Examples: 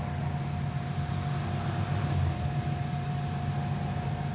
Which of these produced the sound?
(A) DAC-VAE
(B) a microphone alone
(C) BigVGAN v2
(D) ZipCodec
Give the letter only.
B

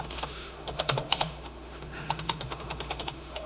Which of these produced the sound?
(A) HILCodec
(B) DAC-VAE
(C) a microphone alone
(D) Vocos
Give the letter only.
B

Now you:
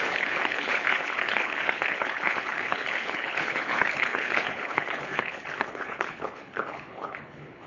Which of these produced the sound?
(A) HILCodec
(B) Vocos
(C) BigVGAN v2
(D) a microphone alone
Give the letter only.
A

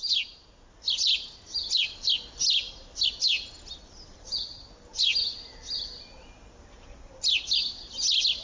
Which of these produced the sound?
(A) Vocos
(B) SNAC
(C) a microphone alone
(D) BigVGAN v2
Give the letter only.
C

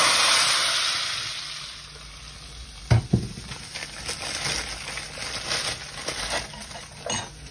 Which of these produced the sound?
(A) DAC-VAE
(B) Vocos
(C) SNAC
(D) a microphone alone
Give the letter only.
D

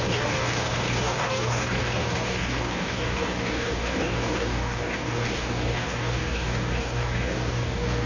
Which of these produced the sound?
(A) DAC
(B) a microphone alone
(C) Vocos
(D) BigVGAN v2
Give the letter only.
A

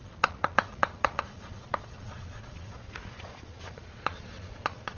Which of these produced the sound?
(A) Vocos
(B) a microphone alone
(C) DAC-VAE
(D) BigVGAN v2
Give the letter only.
A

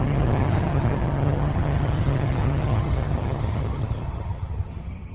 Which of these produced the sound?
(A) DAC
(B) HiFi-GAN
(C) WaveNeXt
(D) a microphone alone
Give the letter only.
B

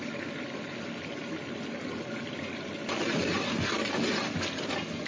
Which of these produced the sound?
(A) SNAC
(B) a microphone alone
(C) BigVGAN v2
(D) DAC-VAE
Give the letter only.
B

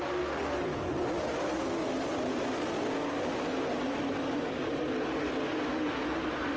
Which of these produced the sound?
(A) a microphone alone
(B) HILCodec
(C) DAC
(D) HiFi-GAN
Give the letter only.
A